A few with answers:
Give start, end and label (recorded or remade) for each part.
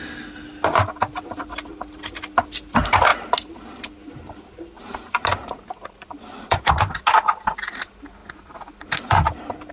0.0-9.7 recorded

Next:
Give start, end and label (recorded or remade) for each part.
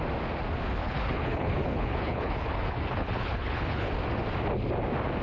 0.0-0.8 recorded; 0.8-3.9 remade; 3.9-5.2 recorded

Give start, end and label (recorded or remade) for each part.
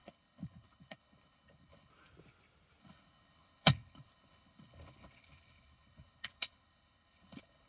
0.0-1.9 remade; 1.9-2.8 recorded; 2.8-7.7 remade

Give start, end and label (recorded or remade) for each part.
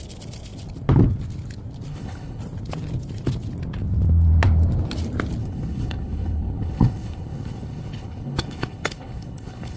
0.0-1.9 recorded; 1.9-2.4 remade; 2.4-5.4 recorded; 5.4-9.8 remade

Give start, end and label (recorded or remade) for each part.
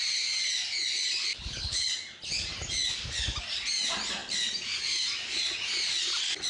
0.0-1.3 recorded; 1.3-1.9 remade; 1.9-6.5 recorded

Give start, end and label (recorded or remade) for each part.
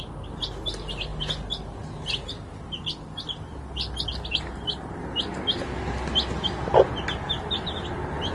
0.0-8.3 recorded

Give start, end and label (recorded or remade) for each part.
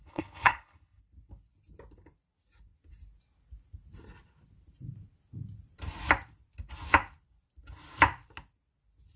0.0-1.0 remade; 1.0-9.2 recorded